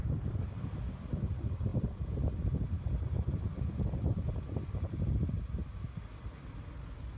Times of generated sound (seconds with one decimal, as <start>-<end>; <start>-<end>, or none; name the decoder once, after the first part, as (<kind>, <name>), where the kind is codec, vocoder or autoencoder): none